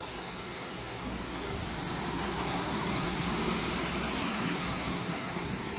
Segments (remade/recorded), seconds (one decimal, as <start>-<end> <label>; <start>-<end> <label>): 0.0-1.6 remade; 1.6-2.2 recorded; 2.2-3.3 remade; 3.3-4.1 recorded; 4.1-5.8 remade